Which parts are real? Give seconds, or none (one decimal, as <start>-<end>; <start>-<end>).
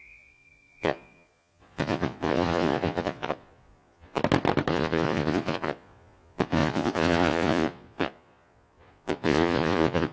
4.2-4.7